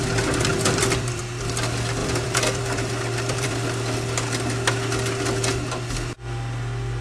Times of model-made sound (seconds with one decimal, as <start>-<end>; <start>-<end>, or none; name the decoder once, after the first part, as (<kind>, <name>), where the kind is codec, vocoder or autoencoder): 0.5-1.2 (vocoder, BigVGAN v2); 2.0-3.5